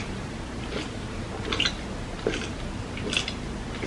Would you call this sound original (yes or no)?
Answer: yes